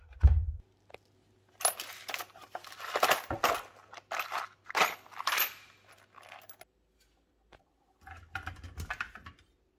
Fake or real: real